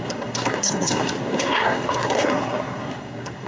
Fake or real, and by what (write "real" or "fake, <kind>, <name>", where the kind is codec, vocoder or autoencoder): fake, codec, SNAC